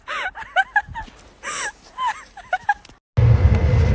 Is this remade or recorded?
recorded